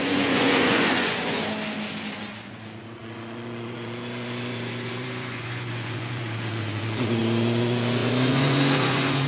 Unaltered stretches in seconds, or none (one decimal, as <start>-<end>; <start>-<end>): 1.4-2.2